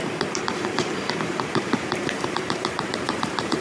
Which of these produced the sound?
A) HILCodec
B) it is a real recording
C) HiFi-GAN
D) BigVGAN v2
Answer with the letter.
D